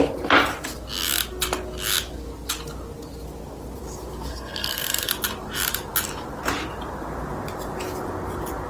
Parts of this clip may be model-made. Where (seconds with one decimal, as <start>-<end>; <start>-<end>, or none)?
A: 4.3-5.1